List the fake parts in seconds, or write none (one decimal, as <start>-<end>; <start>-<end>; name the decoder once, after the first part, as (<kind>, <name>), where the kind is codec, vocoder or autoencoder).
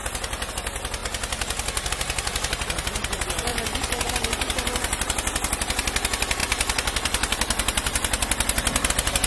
3.5-4.1 (vocoder, BigVGAN v2); 6.4-8.9